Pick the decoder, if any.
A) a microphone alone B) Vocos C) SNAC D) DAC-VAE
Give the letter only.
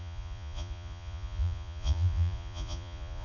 B